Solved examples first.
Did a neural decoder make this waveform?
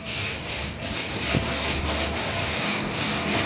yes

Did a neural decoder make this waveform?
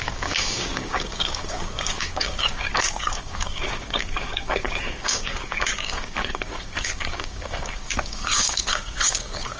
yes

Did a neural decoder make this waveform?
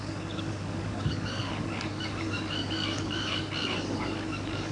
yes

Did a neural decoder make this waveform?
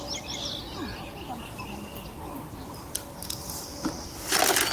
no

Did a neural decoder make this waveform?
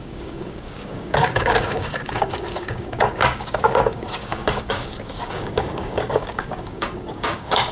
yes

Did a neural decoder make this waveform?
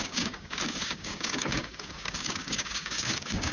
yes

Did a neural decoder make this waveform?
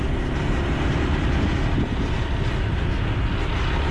no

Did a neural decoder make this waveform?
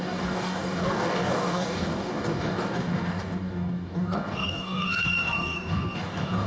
yes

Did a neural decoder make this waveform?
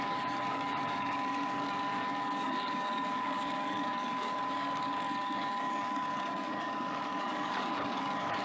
yes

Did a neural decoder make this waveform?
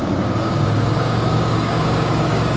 yes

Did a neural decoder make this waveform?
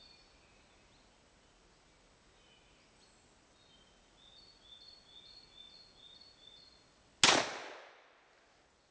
no